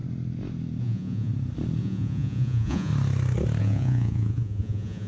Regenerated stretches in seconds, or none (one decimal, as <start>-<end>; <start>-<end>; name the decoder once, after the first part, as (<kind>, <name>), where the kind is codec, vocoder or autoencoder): 0.8-1.3 (vocoder, Vocos); 1.8-2.9; 3.6-5.1